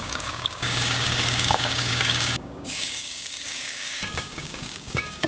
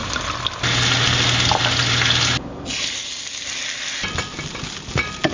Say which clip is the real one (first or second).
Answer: second